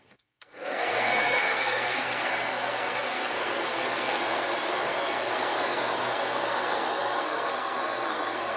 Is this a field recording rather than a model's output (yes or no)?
no